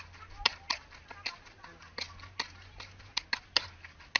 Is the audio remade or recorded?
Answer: recorded